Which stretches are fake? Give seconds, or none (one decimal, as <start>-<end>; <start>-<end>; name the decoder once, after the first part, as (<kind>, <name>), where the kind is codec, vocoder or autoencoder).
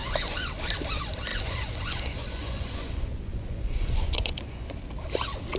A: 0.0-0.5 (vocoder, Vocos); 1.3-4.7